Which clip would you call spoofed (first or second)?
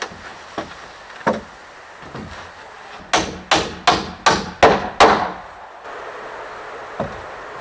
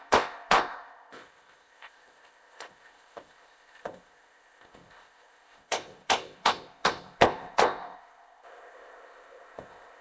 second